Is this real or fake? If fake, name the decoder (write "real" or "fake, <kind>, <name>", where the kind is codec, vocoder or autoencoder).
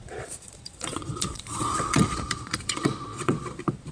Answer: fake, vocoder, Vocos